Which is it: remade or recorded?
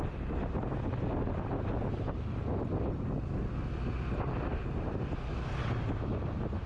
recorded